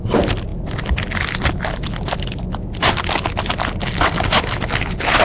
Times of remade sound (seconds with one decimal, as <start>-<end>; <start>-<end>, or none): none